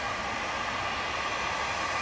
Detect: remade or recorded recorded